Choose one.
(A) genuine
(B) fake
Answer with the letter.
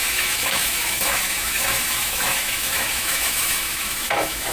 B